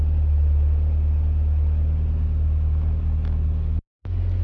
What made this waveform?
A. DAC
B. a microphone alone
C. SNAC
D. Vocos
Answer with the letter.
B